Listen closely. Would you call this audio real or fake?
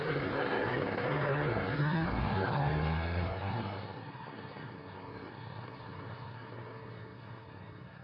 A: fake